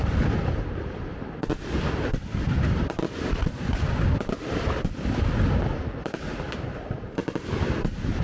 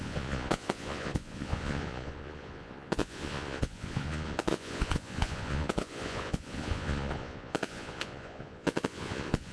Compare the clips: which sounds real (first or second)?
first